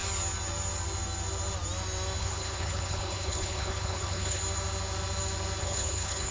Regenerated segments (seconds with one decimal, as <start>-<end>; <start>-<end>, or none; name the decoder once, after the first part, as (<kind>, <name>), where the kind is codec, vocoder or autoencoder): 2.2-4.4 (codec, HILCodec); 5.6-6.3